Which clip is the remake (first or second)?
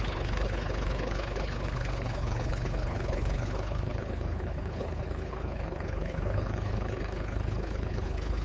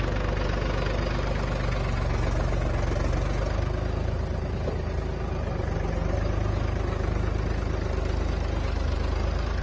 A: first